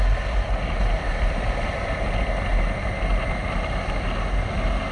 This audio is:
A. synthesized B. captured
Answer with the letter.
B